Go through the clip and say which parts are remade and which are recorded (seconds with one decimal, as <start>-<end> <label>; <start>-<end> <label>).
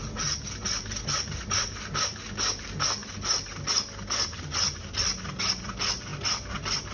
0.0-6.9 recorded